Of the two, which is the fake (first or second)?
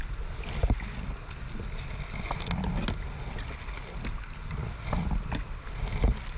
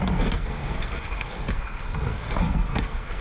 second